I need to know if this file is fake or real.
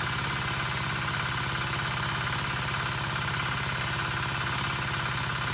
real